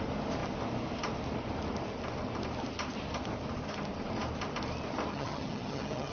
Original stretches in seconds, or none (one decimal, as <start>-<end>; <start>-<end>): 0.0-5.1